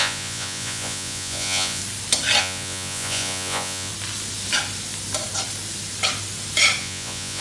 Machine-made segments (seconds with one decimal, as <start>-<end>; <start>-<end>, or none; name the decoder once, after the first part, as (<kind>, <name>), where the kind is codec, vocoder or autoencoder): 0.0-1.8 (vocoder, Vocos); 2.4-3.9; 6.8-7.4